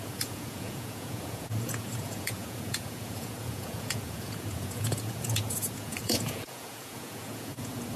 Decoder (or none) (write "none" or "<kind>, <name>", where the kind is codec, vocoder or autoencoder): vocoder, Vocos